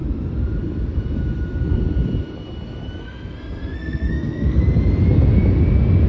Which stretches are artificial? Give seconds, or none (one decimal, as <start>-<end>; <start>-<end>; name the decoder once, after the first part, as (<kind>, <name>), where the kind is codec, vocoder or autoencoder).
3.0-4.6 (codec, SNAC)